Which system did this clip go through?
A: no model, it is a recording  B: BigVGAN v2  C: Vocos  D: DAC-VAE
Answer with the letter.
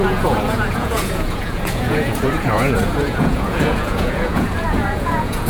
C